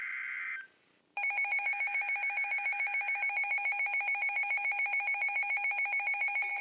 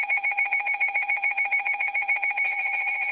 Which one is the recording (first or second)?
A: first